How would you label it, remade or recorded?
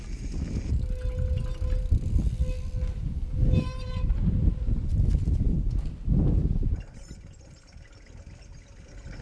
recorded